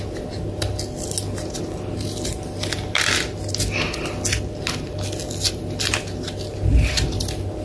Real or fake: real